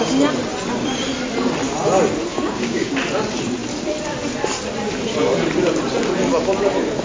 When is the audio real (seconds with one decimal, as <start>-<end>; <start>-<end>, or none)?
0.0-2.3; 2.9-7.0